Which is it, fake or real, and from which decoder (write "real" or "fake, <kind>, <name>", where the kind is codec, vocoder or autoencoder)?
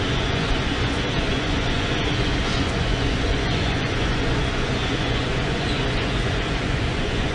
fake, vocoder, Vocos